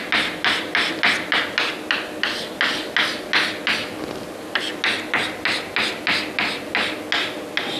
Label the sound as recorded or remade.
recorded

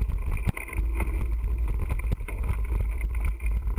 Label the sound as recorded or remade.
recorded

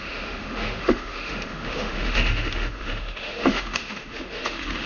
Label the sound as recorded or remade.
remade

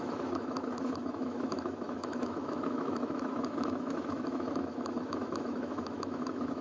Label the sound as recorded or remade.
remade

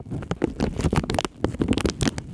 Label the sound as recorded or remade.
recorded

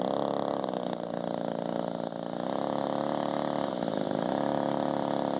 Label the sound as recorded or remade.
recorded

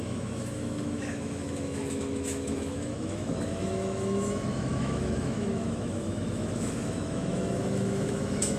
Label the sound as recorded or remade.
remade